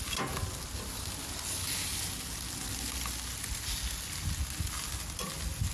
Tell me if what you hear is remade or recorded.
recorded